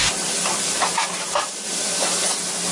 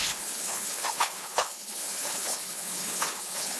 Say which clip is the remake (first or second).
second